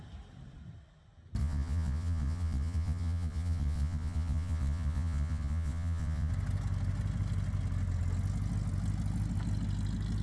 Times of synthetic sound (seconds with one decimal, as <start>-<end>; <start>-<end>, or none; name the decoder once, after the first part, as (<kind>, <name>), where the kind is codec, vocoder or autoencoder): 1.4-6.3 (vocoder, Vocos)